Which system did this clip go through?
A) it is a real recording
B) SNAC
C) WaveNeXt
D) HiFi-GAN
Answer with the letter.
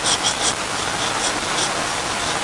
A